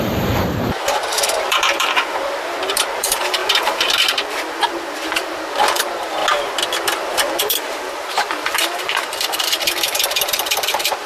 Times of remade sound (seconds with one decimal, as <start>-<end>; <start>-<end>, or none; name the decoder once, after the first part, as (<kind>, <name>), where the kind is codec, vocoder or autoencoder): 0.0-6.2 (vocoder, BigVGAN v2); 7.4-11.1